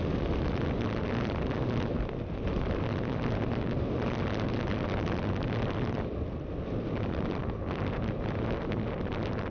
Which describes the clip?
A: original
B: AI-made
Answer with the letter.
A